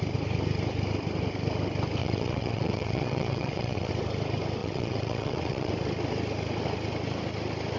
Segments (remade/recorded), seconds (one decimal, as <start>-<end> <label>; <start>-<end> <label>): 0.0-2.0 recorded; 2.0-3.9 remade; 3.9-4.6 recorded; 4.6-5.7 remade; 5.7-7.8 recorded